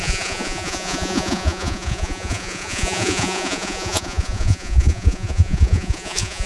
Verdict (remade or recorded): remade